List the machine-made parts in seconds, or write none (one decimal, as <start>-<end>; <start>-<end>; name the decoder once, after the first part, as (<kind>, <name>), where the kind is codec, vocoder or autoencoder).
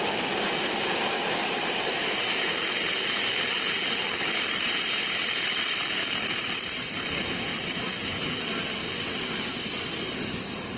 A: 1.4-2.2 (vocoder, BigVGAN v2); 3.3-6.8; 7.5-8.1